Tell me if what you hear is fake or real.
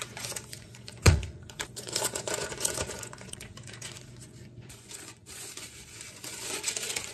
fake